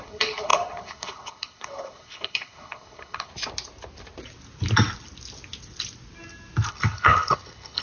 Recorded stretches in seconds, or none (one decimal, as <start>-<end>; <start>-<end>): 3.3-6.7